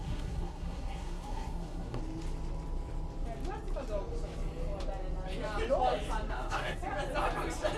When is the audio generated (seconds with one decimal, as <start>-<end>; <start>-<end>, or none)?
0.0-2.0; 6.3-6.8